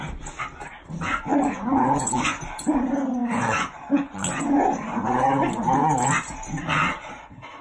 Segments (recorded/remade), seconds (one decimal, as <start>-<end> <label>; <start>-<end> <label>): 0.0-1.3 recorded; 1.3-2.4 remade; 2.4-3.2 recorded; 3.2-4.4 remade; 4.4-7.6 recorded